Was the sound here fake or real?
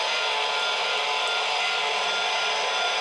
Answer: real